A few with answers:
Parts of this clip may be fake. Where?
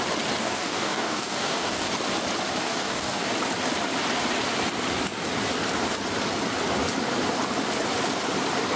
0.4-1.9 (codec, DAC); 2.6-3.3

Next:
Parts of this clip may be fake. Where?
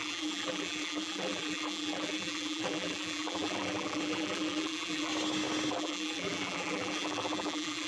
0.0-5.1 (vocoder, BigVGAN v2); 5.7-7.9